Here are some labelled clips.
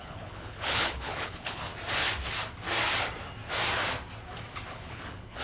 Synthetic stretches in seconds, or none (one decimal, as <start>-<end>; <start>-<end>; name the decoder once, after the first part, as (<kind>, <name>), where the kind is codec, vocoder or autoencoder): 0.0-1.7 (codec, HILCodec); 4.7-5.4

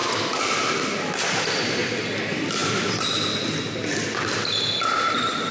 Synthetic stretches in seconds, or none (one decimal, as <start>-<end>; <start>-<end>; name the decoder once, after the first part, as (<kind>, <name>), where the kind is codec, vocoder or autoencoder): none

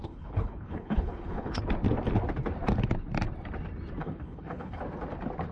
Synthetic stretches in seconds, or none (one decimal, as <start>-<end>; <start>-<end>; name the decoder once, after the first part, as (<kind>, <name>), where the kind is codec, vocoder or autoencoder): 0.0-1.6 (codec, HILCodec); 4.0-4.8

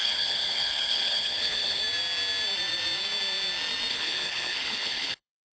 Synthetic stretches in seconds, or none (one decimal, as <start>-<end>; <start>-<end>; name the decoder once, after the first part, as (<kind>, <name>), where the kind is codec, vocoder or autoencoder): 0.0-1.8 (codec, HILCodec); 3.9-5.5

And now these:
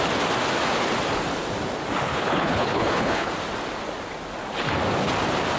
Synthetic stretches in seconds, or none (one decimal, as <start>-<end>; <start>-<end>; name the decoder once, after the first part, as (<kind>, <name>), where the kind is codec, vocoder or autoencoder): 2.1-3.3 (codec, HILCodec)

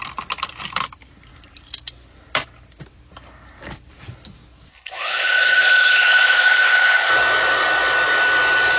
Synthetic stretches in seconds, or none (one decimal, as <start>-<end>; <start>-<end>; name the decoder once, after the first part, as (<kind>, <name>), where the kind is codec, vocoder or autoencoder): 4.7-7.1 (codec, HILCodec)